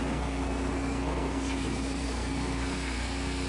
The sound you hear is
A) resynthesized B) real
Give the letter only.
A